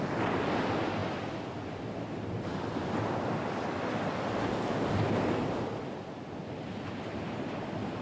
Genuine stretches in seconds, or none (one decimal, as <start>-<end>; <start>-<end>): 0.0-8.0